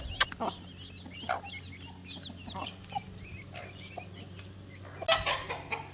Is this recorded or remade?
recorded